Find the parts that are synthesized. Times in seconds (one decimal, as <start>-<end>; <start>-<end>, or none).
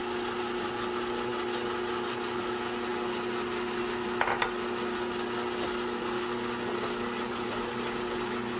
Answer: none